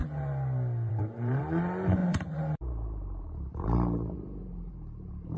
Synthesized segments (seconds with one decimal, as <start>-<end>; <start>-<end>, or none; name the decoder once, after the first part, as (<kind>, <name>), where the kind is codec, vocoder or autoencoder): 0.9-5.4 (vocoder, BigVGAN v2)